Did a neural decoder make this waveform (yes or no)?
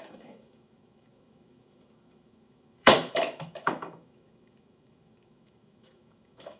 yes